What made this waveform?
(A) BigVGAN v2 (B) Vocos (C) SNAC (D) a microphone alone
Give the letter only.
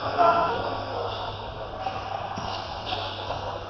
C